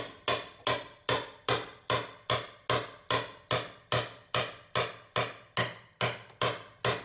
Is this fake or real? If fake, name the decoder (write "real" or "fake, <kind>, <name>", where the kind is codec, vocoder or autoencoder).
real